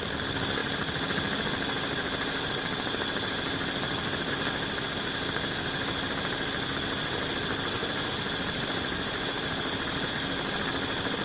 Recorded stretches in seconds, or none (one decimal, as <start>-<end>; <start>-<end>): 0.0-7.8; 10.1-11.2